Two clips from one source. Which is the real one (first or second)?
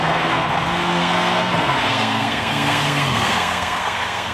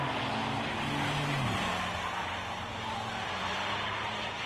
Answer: second